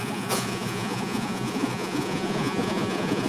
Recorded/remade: remade